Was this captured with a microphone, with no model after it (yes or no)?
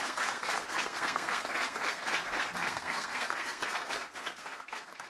no